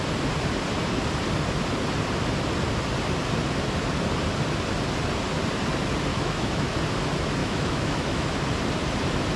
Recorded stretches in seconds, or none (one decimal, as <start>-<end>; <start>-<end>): 0.0-6.1; 6.8-7.4; 8.3-9.4